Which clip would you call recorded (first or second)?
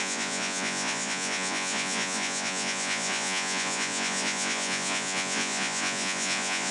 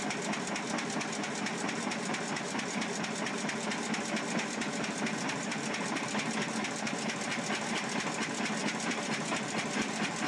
second